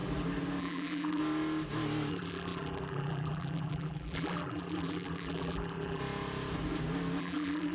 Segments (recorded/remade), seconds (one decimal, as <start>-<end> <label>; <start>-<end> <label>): 0.0-0.6 recorded; 0.6-1.2 remade; 1.2-2.1 recorded; 2.1-6.0 remade; 6.0-7.2 recorded; 7.2-7.7 remade